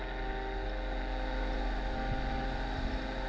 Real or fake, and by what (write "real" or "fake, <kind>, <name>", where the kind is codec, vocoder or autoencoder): real